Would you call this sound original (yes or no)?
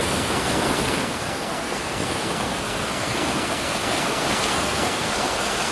no